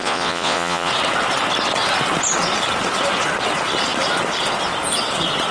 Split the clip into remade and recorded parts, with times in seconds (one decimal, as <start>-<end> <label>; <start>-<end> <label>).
0.0-0.9 remade; 0.9-5.5 recorded